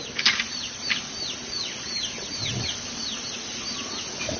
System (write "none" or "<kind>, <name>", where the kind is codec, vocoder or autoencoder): none